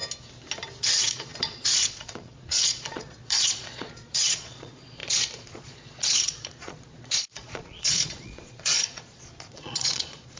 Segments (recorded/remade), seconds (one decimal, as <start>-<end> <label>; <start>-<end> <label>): 0.0-0.8 recorded; 0.8-10.4 remade